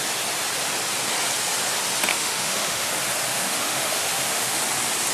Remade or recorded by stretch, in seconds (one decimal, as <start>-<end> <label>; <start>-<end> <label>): 0.0-2.1 recorded; 2.1-2.9 remade; 2.9-3.3 recorded; 3.3-4.6 remade; 4.6-5.1 recorded